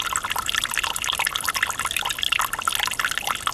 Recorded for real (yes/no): yes